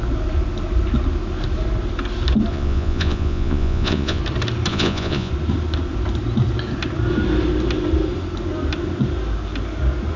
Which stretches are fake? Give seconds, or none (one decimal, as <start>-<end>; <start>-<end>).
2.5-4.2; 4.7-5.3